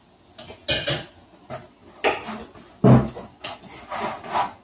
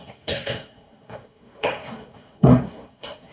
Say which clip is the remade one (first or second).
second